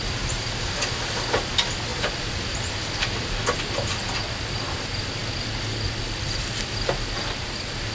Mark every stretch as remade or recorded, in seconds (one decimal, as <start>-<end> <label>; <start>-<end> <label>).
0.0-7.9 recorded